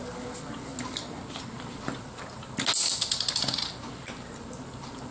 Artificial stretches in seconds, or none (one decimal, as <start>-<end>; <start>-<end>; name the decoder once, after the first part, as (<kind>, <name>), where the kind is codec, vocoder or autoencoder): none